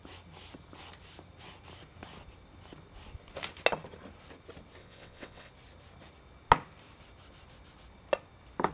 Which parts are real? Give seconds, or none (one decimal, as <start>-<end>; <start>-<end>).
0.0-4.8; 5.5-8.7